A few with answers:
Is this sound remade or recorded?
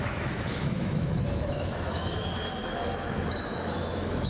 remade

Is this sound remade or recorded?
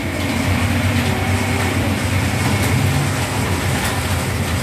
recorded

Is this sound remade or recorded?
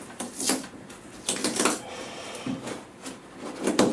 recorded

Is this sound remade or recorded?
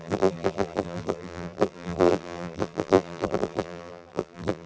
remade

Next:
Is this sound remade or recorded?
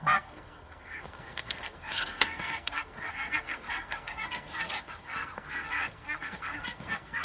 remade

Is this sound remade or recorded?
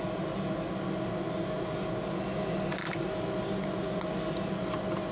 recorded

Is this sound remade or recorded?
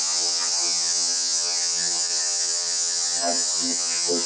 remade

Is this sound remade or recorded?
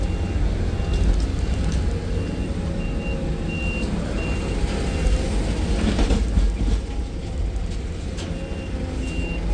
recorded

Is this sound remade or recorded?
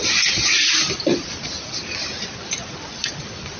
recorded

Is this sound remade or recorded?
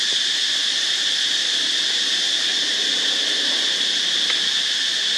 recorded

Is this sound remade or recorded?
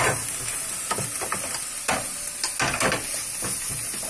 recorded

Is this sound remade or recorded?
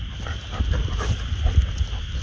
recorded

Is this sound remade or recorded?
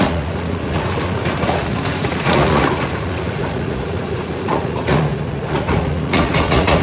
remade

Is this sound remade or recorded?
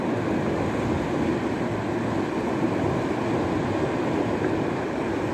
recorded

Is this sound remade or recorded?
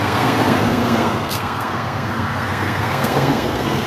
remade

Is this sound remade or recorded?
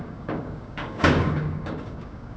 remade